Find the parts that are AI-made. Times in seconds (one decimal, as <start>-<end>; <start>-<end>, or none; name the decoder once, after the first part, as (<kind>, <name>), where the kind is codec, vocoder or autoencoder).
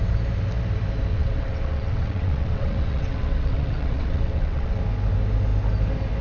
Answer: 1.1-4.8 (vocoder, WaveNeXt)